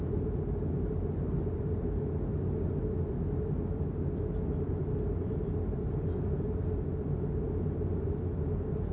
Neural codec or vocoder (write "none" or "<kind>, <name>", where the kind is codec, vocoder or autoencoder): none